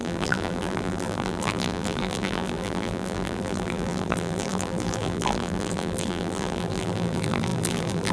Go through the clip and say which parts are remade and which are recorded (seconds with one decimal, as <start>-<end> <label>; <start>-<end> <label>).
0.0-8.1 remade